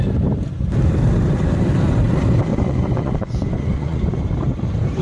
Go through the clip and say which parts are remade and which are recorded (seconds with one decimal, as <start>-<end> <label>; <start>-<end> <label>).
0.0-2.5 recorded; 2.5-4.2 remade; 4.2-5.0 recorded